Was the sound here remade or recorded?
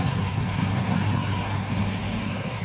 remade